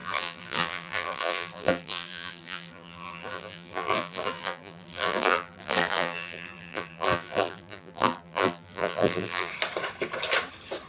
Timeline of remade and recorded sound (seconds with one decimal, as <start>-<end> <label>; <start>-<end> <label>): 0.0-9.5 remade; 9.5-10.9 recorded